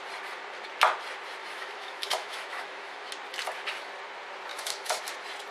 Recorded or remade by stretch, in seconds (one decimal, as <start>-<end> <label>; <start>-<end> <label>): 0.0-1.4 recorded; 1.4-3.1 remade; 3.1-4.5 recorded; 4.5-5.0 remade; 5.0-5.5 recorded